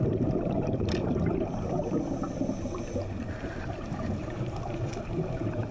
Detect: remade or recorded remade